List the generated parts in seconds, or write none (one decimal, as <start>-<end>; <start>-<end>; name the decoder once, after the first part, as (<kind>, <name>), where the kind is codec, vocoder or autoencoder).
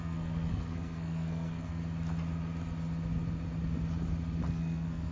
0.0-1.8 (codec, SNAC); 4.5-5.1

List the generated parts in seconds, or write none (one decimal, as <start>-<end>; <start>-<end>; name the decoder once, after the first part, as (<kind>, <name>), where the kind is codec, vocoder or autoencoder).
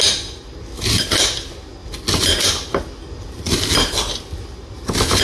none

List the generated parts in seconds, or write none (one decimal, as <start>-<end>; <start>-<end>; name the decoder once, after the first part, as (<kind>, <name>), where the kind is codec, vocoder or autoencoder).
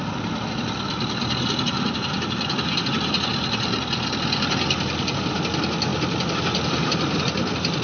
none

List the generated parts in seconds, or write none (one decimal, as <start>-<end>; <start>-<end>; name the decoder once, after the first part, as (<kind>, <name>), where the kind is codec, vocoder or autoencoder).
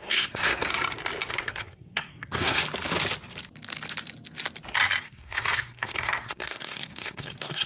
0.0-0.7 (codec, SNAC); 1.3-2.6; 5.0-7.7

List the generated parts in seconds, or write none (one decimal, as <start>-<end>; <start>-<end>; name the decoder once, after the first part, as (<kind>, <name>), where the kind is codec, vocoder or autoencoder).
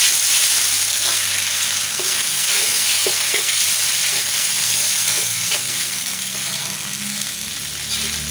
0.9-3.6 (codec, SNAC); 4.1-7.5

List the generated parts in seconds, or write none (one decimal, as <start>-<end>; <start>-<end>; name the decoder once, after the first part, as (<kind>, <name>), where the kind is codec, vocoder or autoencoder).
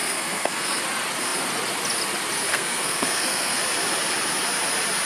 0.0-0.8 (codec, SNAC); 2.5-3.6